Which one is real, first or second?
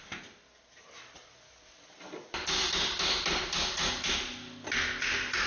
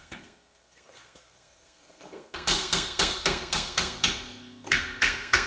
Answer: first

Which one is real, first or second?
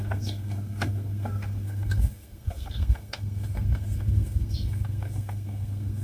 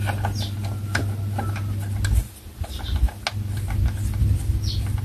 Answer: second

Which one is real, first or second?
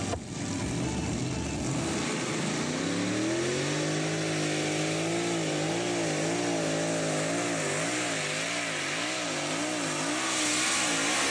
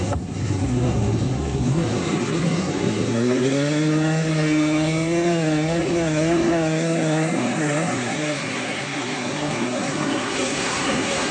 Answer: first